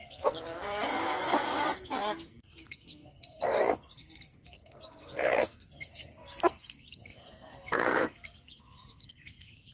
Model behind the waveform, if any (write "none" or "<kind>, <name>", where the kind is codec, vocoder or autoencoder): codec, SNAC